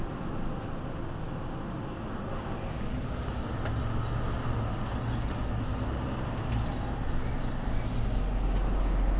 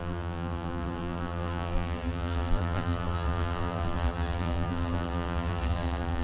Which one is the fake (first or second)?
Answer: second